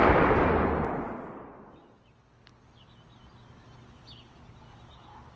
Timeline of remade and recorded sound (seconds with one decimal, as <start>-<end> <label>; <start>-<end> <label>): 0.0-5.4 recorded